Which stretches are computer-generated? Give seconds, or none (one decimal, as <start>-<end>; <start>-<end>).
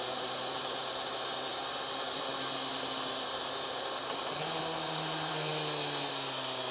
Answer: 0.0-1.5; 4.6-5.5